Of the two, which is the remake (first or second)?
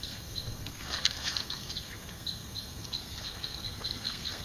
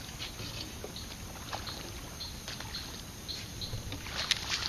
first